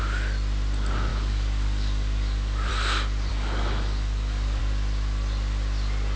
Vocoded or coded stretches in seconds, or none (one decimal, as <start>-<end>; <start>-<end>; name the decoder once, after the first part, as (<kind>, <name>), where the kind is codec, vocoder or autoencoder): 1.1-2.7 (codec, DAC); 3.3-4.6